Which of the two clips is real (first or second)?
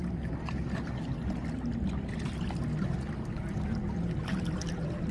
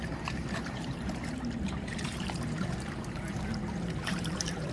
first